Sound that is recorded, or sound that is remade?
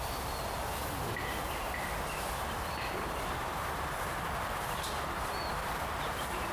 recorded